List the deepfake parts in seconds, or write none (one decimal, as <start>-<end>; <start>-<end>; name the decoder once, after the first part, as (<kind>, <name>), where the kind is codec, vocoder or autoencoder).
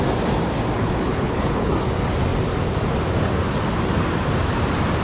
0.8-1.7 (codec, HILCodec)